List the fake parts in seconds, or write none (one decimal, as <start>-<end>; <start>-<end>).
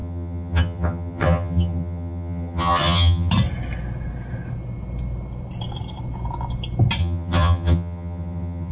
0.0-3.3; 7.0-8.7